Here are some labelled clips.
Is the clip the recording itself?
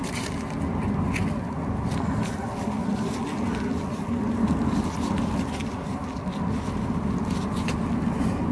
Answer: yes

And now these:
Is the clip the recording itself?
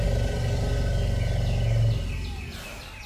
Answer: yes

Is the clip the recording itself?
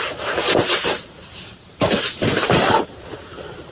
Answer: no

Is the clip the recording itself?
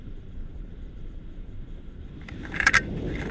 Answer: no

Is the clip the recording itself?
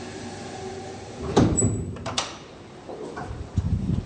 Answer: no